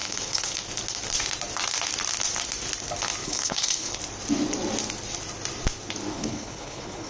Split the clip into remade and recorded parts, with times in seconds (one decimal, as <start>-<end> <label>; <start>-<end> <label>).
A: 0.0-0.6 remade; 0.6-3.2 recorded; 3.2-4.0 remade; 4.0-6.1 recorded; 6.1-7.1 remade